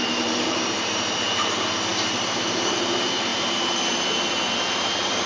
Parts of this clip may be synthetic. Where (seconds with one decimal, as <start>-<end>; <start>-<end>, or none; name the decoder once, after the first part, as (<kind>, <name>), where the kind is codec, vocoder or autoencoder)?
0.0-5.3 (vocoder, BigVGAN v2)